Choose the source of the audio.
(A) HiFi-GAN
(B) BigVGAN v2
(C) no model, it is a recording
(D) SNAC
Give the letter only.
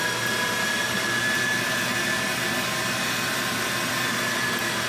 C